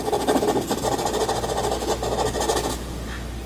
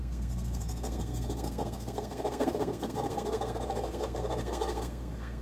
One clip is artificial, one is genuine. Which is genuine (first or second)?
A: first